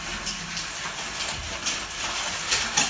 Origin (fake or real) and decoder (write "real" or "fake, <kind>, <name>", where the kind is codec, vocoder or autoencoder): real